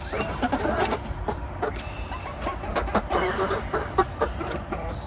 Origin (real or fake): fake